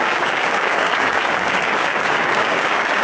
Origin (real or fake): fake